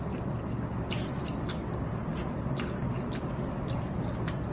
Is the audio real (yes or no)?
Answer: yes